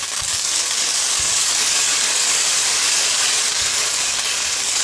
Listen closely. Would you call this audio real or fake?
fake